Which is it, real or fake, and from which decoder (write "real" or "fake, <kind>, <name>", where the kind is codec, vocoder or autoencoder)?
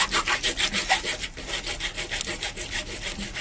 real